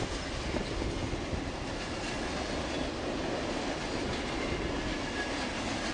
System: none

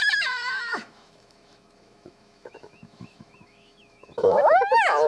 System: autoencoder, DAC-VAE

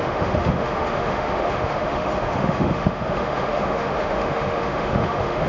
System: autoencoder, DAC-VAE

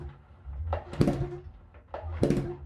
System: none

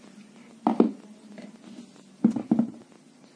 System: none